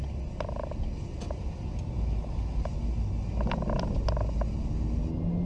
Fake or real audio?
real